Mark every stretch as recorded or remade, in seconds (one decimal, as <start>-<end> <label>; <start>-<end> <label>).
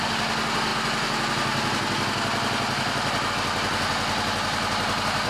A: 0.0-5.3 recorded